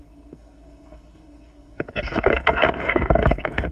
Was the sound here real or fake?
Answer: fake